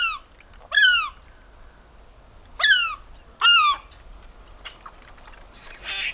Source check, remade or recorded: recorded